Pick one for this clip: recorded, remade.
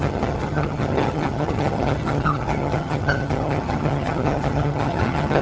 remade